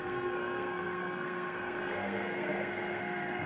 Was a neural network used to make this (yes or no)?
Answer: yes